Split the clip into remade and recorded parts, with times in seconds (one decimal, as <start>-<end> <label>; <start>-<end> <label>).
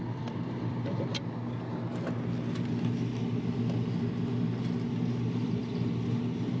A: 0.0-1.1 remade; 1.1-5.1 recorded; 5.1-6.6 remade